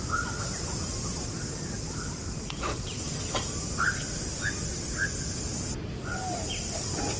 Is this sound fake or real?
real